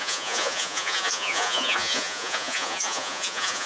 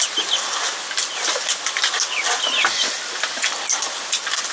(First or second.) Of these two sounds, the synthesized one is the first